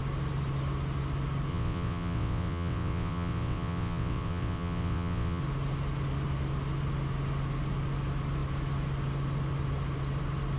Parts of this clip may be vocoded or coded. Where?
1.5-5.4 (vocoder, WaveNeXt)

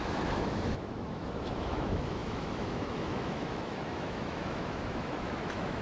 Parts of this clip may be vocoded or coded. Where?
0.0-5.8 (autoencoder, DAC-VAE)

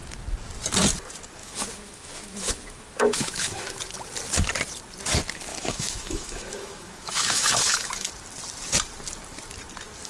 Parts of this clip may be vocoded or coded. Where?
1.4-3.8 (autoencoder, DAC-VAE); 5.5-8.1